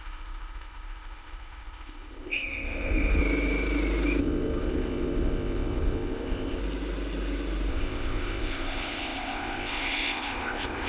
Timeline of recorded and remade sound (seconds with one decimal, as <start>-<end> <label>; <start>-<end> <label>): 0.0-3.2 remade; 3.2-4.2 recorded; 4.2-6.6 remade; 6.6-7.7 recorded; 7.7-10.9 remade